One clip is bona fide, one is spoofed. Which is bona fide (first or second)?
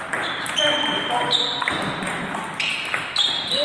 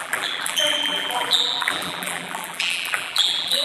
first